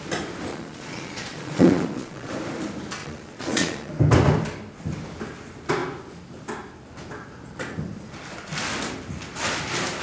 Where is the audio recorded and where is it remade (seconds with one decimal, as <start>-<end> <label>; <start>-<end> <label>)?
0.0-0.5 recorded; 0.5-2.3 remade; 2.3-3.0 recorded; 3.0-3.9 remade; 3.9-10.0 recorded